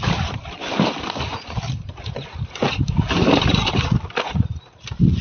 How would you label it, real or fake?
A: real